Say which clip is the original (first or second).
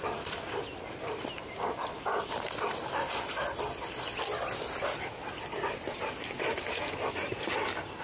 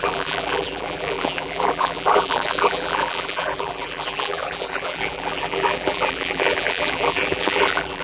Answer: first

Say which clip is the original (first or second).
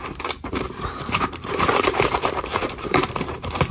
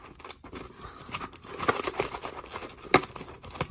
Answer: second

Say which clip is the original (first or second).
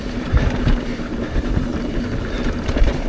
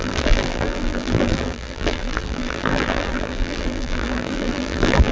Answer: first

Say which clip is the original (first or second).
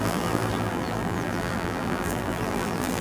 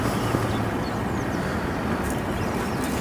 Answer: second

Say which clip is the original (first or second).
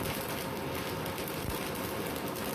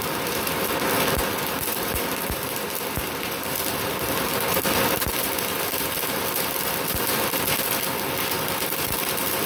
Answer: first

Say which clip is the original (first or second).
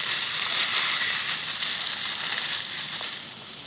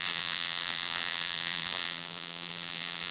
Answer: first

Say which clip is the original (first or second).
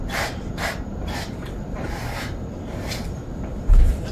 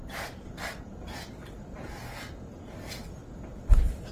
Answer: second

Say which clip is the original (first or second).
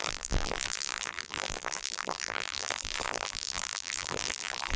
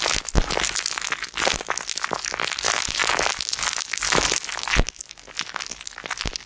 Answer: second